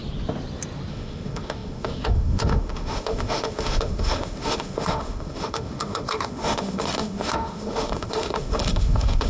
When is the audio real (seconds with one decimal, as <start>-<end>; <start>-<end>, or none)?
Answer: 0.0-0.9